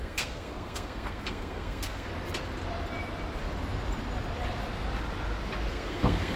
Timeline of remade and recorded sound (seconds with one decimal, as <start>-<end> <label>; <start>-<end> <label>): 0.0-2.1 remade; 2.1-5.7 recorded; 5.7-6.4 remade